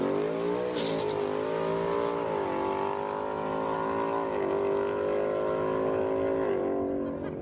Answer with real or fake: real